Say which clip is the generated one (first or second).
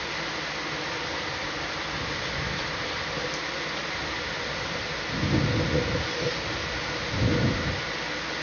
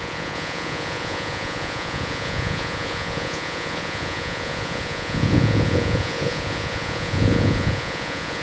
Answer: second